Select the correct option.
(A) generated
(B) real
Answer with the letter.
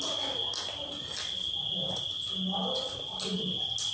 B